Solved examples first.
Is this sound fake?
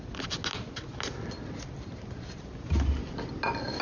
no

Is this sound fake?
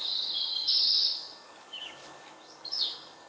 yes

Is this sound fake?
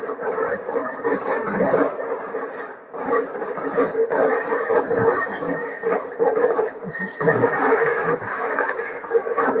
yes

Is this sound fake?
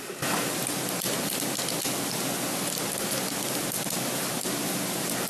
no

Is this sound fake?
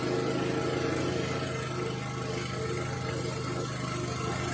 no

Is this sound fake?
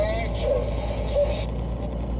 no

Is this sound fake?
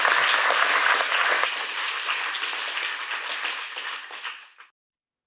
no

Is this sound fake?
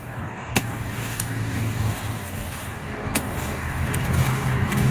yes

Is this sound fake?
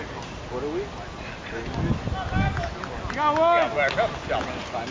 no